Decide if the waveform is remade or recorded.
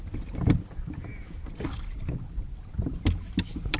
recorded